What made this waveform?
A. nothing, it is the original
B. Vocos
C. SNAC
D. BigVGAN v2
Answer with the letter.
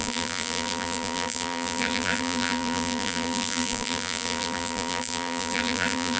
D